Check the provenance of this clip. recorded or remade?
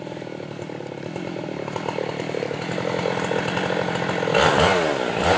recorded